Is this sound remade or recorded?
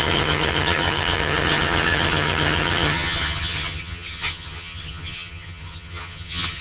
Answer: remade